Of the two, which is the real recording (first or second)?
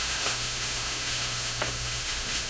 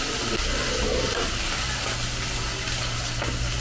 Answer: second